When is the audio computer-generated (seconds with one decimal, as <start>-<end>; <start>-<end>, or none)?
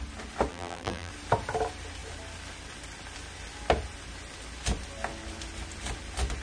0.5-1.1